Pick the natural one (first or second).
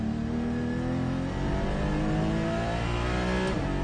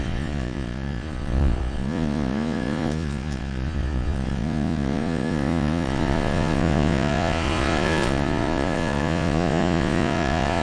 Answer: first